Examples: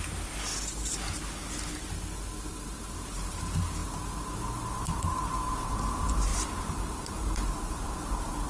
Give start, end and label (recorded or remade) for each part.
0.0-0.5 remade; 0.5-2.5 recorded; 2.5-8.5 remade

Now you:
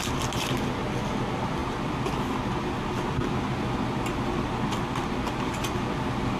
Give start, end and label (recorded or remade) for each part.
0.0-6.4 recorded

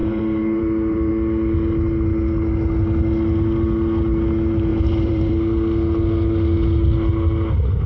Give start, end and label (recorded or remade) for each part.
0.0-1.1 remade; 1.1-4.7 recorded; 4.7-5.3 remade; 5.3-7.9 recorded

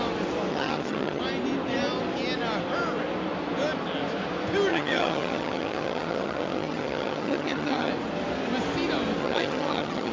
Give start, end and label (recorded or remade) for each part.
0.0-0.5 recorded; 0.5-1.2 remade; 1.2-4.7 recorded; 4.7-7.9 remade; 7.9-9.2 recorded; 9.2-10.1 remade

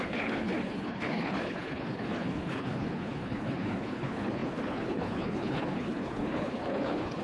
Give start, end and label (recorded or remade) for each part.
0.0-7.2 remade

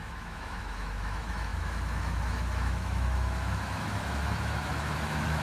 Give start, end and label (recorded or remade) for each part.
0.0-5.4 remade

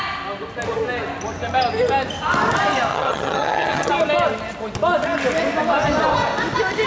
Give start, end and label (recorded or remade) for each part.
0.0-2.9 recorded; 2.9-3.9 remade; 3.9-6.9 recorded

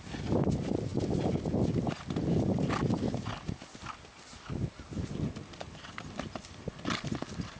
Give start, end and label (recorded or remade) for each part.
0.0-5.4 recorded; 5.4-7.6 remade